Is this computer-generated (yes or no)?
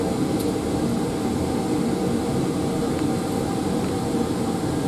no